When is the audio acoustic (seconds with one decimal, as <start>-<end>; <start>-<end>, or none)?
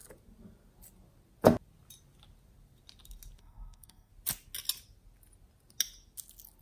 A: 0.0-3.4; 4.1-6.6